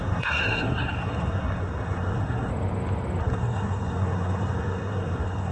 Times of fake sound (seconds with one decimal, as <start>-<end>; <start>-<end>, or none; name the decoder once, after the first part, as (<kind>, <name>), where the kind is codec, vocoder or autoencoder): 0.0-2.5 (codec, SNAC); 3.2-5.5